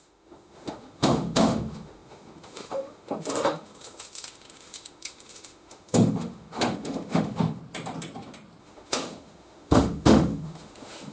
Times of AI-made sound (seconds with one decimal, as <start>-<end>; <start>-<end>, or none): 0.0-7.6; 8.6-11.1

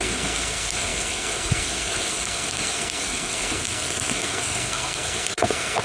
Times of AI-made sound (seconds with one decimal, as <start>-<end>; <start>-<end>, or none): 0.0-5.8

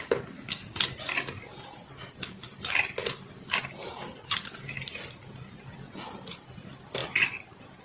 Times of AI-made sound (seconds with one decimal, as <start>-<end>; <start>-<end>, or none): none

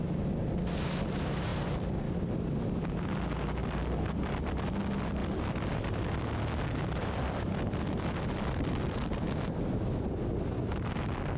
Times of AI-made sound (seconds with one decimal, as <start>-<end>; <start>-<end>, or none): 3.6-4.7; 5.2-6.2; 7.0-10.3

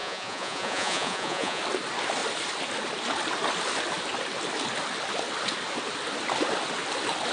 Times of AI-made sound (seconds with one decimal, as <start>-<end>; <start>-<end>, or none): 0.0-1.6

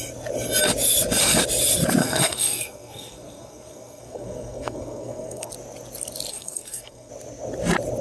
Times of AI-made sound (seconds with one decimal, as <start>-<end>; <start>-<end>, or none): 2.0-5.5; 6.3-7.1

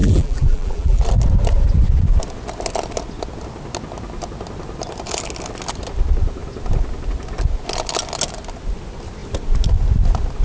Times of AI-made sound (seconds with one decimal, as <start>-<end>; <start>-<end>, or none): 0.0-1.0